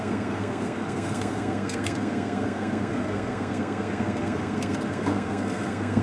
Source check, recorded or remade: remade